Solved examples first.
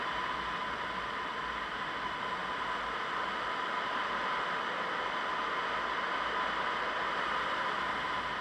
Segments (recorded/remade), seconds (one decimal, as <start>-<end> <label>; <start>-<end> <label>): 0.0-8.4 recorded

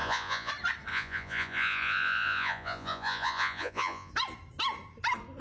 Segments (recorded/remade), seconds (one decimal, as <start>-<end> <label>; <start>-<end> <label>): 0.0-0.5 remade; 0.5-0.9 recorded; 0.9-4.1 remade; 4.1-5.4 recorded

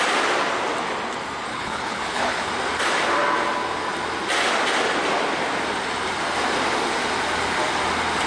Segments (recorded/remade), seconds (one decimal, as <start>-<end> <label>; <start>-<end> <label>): 0.0-1.5 recorded; 1.5-2.5 remade; 2.5-8.3 recorded

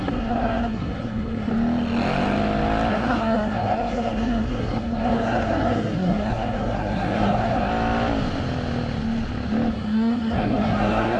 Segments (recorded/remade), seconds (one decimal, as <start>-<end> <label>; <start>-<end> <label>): 0.0-1.5 remade; 1.5-2.9 recorded; 2.9-7.7 remade; 7.7-9.7 recorded; 9.7-11.2 remade

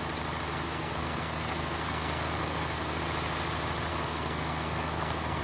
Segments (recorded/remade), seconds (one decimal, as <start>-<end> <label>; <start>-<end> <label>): 0.0-0.5 recorded; 0.5-3.0 remade; 3.0-3.9 recorded; 3.9-5.4 remade

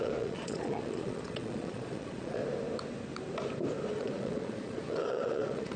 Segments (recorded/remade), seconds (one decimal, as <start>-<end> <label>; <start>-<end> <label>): 0.0-2.4 remade; 2.4-3.9 recorded; 3.9-5.8 remade